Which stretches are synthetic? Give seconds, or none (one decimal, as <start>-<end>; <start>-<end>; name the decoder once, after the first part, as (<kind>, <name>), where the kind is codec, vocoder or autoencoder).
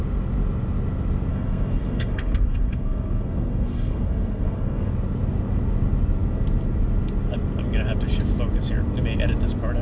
1.3-4.9 (codec, SNAC)